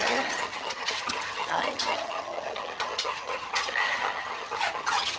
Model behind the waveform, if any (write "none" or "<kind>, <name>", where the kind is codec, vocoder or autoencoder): vocoder, HiFi-GAN